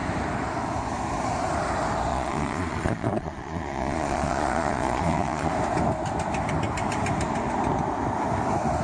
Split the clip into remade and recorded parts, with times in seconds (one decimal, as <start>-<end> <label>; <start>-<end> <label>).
0.0-2.1 recorded; 2.1-5.5 remade; 5.5-8.8 recorded